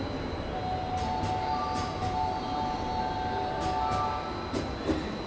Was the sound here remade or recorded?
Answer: recorded